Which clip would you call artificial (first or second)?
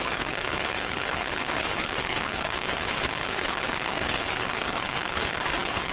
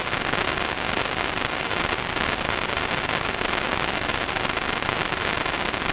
first